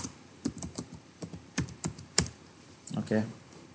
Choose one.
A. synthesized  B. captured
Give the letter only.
A